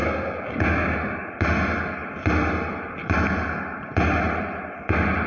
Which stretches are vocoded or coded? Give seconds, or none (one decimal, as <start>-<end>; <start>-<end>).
0.0-1.3